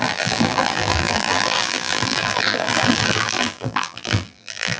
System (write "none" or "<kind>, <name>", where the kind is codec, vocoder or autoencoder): vocoder, BigVGAN v2